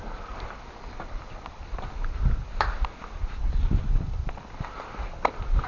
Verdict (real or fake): real